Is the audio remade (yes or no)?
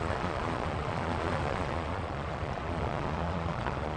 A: yes